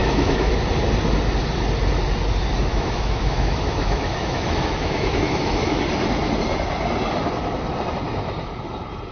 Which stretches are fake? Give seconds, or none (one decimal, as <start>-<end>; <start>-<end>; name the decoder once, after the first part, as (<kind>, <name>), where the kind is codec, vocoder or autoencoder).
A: 0.0-0.5 (autoencoder, DAC-VAE); 2.7-5.8